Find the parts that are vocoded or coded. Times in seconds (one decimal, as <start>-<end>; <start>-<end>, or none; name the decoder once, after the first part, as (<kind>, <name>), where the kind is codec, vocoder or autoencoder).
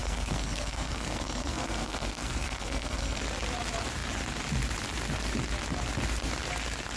0.0-3.2 (codec, SNAC)